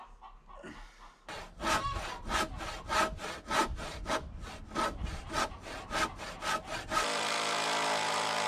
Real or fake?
real